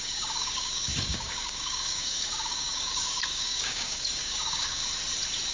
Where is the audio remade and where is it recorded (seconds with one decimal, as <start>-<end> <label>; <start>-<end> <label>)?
0.0-4.8 remade; 4.8-5.5 recorded